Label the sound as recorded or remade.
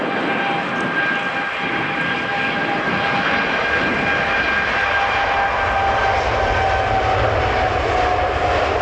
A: recorded